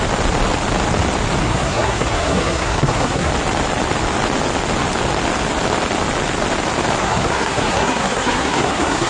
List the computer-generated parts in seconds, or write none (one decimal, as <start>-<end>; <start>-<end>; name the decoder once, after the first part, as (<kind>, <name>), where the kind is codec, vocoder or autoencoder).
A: 1.4-3.3 (codec, SNAC); 7.0-9.1